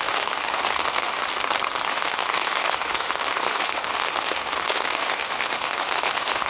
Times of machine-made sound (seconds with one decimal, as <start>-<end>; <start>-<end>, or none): 0.0-1.2; 1.9-6.5